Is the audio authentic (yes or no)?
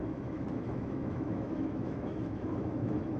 no